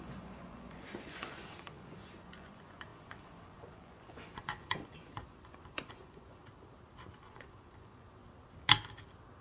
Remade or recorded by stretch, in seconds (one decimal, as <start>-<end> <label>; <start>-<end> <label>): 0.0-6.4 remade; 6.4-7.2 recorded; 7.2-8.2 remade; 8.2-9.4 recorded